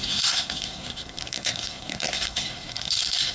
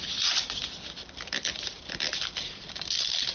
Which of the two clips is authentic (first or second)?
second